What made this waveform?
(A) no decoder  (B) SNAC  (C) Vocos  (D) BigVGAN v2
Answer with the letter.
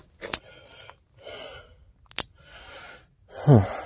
A